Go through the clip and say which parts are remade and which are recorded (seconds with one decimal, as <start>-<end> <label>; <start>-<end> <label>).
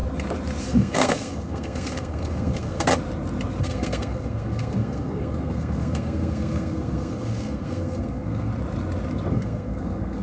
0.0-0.6 recorded; 0.6-2.9 remade; 2.9-3.6 recorded; 3.6-8.5 remade; 8.5-9.3 recorded; 9.3-10.2 remade